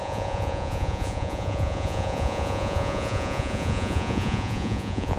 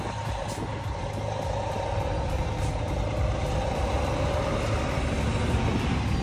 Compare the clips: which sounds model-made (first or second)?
first